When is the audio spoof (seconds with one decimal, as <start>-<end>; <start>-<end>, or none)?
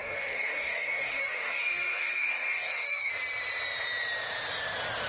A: 0.0-3.1